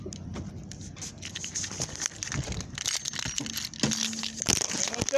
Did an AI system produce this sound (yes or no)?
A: no